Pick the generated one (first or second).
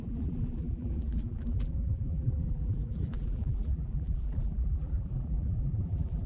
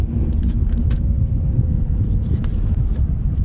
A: first